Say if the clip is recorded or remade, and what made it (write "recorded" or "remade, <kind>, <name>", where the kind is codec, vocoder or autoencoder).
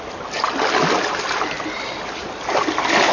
recorded